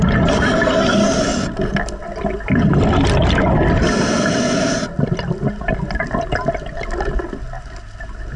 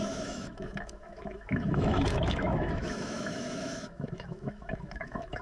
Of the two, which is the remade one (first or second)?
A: second